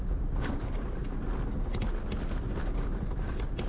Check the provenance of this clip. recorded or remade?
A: recorded